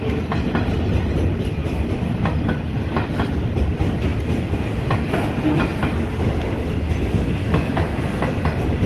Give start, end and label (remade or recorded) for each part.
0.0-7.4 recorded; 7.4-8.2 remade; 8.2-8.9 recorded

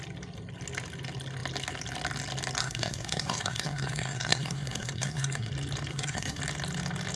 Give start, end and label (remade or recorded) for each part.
0.0-2.6 recorded; 2.6-5.5 remade; 5.5-5.9 recorded; 5.9-6.4 remade; 6.4-7.2 recorded

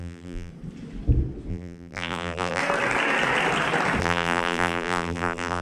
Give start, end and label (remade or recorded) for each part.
0.0-0.5 remade; 0.5-1.5 recorded; 1.5-2.6 remade; 2.6-4.0 recorded; 4.0-5.6 remade

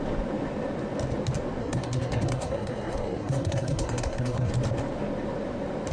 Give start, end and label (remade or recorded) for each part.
0.0-1.6 recorded; 1.6-4.5 remade; 4.5-5.9 recorded

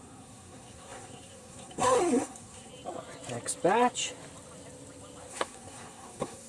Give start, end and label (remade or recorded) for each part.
0.0-2.7 remade; 2.7-5.3 recorded; 5.3-6.5 remade

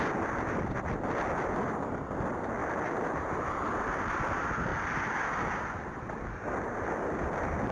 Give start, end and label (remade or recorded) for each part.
0.0-2.6 recorded; 2.6-3.7 remade; 3.7-7.7 recorded